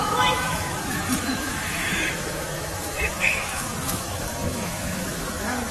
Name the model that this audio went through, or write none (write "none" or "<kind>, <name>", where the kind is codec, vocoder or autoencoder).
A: autoencoder, DAC-VAE